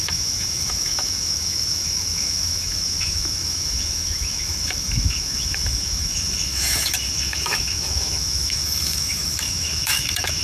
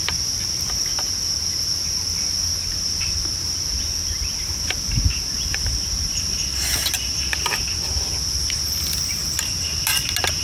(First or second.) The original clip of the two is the second